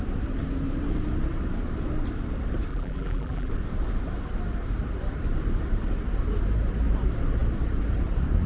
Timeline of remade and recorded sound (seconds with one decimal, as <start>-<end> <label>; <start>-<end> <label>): 0.0-2.7 recorded; 2.7-3.5 remade; 3.5-8.5 recorded